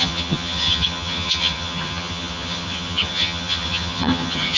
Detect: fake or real fake